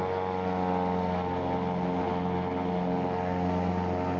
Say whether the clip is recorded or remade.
recorded